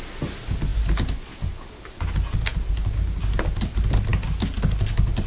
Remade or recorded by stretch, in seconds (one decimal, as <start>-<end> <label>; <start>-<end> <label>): 0.0-5.3 recorded